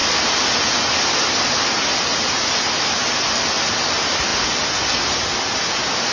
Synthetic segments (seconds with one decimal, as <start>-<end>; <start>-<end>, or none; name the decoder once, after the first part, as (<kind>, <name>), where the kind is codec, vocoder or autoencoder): none